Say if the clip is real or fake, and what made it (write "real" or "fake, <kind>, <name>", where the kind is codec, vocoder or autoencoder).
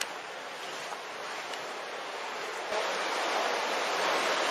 real